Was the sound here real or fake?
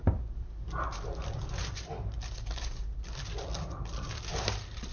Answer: real